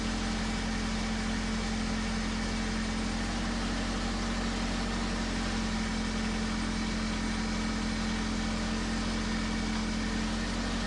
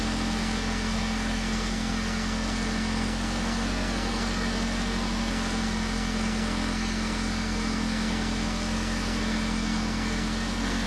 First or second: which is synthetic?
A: second